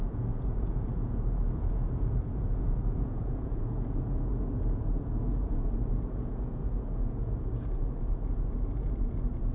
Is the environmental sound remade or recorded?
remade